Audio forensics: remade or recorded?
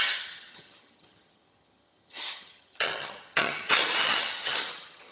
remade